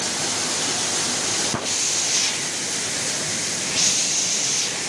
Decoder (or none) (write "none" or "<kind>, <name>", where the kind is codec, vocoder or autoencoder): none